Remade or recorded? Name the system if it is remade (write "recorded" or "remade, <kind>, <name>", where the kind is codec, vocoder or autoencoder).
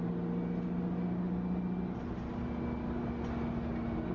recorded